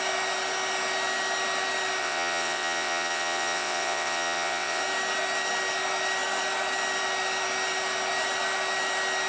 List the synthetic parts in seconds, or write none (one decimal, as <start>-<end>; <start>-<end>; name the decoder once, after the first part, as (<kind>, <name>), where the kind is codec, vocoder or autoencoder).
2.0-4.8 (vocoder, WaveNeXt)